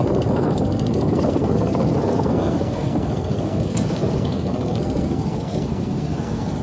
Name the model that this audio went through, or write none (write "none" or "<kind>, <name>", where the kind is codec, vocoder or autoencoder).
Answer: codec, SNAC